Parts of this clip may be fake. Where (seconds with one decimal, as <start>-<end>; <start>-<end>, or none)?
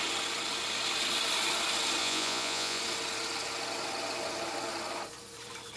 2.0-2.8